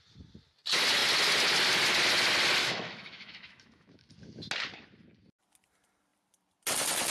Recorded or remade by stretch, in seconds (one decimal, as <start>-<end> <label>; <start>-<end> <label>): 0.0-2.6 recorded; 2.6-4.1 remade; 4.1-7.1 recorded